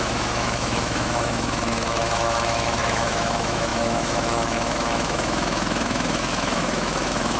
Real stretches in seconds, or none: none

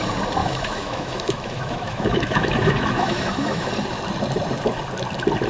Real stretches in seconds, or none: 0.0-0.4; 3.7-5.5

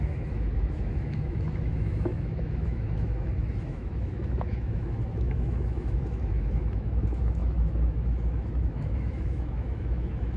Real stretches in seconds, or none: none

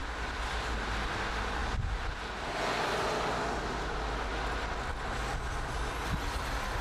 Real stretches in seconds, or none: 0.0-6.8

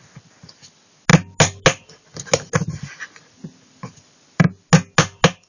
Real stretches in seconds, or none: 0.0-5.5

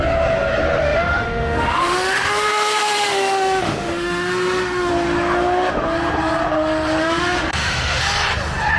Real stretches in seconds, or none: 0.0-0.8; 4.9-7.0; 8.0-8.8

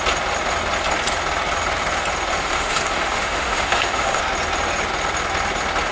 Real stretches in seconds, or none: 0.0-2.4; 4.2-5.9

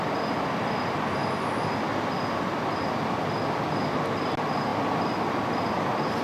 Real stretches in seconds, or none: 0.0-6.2